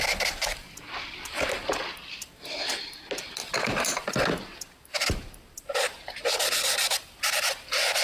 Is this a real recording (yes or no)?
yes